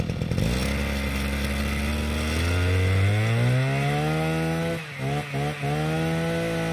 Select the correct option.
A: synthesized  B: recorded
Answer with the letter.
B